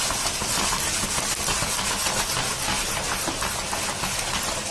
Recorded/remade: recorded